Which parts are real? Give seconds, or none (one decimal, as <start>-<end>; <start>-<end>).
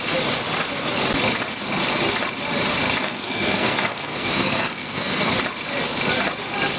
0.0-3.0; 5.3-6.8